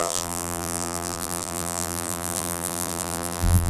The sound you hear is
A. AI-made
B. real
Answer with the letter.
A